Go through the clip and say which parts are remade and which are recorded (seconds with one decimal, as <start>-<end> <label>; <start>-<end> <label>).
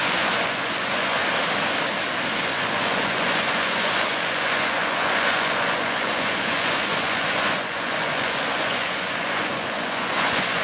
0.0-1.2 remade; 1.2-2.3 recorded; 2.3-10.6 remade